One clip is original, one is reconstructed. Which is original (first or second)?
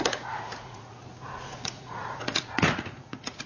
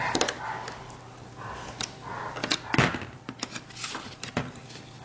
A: second